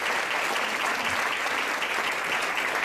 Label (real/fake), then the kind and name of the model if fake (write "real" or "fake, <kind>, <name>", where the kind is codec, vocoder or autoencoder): real